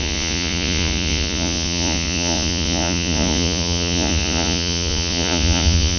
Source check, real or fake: fake